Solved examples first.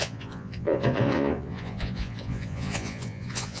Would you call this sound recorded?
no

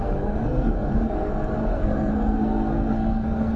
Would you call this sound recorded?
no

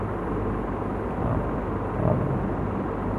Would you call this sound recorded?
yes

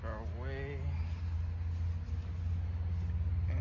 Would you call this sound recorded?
yes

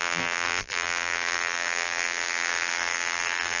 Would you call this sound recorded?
no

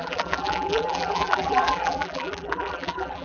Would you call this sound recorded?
no